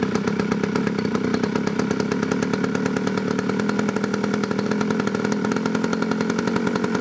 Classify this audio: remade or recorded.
recorded